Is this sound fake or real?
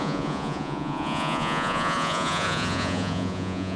fake